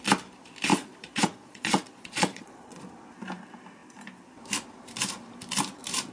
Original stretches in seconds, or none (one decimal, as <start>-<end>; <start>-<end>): 0.0-0.7; 2.8-6.1